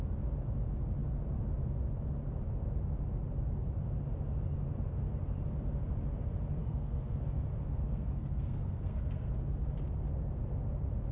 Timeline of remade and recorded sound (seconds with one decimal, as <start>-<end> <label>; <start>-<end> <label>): 0.0-6.6 recorded; 6.6-7.2 remade; 7.2-7.7 recorded; 7.7-9.3 remade; 9.3-11.1 recorded